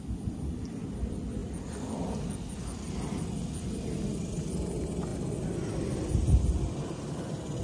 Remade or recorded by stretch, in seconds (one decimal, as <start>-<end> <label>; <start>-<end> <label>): 0.0-7.6 recorded